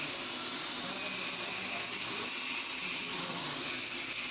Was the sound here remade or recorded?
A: recorded